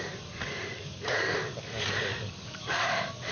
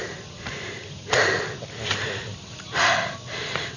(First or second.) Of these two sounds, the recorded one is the second